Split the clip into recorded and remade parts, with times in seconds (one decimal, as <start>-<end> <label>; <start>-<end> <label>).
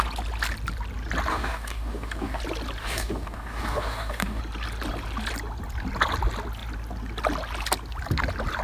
0.0-1.3 recorded; 1.3-2.4 remade; 2.4-2.8 recorded; 2.8-4.4 remade; 4.4-8.6 recorded